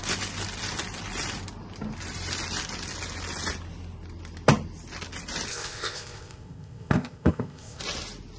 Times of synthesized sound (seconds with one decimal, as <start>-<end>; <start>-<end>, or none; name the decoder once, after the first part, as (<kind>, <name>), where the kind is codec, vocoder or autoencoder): 5.5-7.8 (codec, ZipCodec)